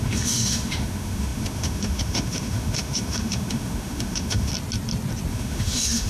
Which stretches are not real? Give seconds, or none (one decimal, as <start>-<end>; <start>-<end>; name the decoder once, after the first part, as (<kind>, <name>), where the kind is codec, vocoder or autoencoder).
0.0-4.5 (autoencoder, DAC-VAE); 5.3-6.1